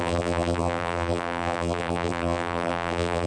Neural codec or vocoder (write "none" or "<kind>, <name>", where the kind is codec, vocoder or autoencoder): vocoder, BigVGAN v2